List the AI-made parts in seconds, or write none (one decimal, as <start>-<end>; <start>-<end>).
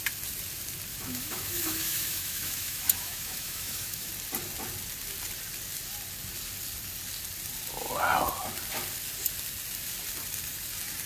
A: 0.9-4.1